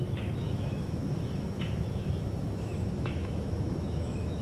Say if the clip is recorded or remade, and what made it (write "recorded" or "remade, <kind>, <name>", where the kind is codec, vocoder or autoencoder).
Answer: remade, autoencoder, DAC-VAE